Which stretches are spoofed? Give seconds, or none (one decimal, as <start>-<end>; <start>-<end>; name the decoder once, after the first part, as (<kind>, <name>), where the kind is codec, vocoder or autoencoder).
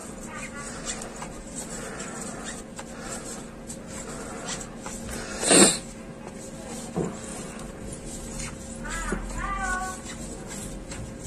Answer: 0.0-2.8 (vocoder, BigVGAN v2); 7.3-8.1